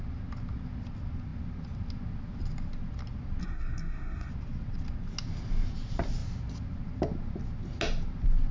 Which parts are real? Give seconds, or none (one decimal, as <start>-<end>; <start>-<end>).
0.0-3.4; 4.3-8.5